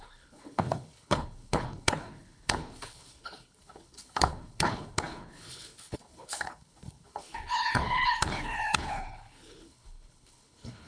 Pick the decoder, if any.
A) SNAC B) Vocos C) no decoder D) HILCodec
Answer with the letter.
D